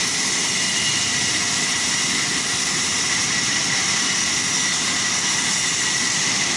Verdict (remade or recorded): recorded